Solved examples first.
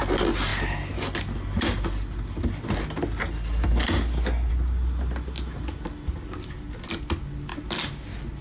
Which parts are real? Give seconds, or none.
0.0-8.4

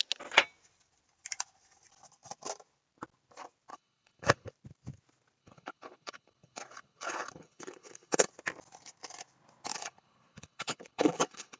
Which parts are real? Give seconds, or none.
0.0-3.7; 4.5-5.4; 8.3-9.7